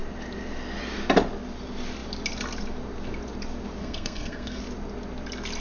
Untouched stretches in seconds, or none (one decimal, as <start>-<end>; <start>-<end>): 0.0-3.8; 4.6-5.6